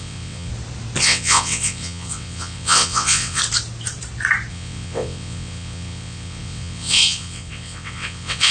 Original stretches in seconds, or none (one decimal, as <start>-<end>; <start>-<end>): 0.5-1.0; 3.4-4.5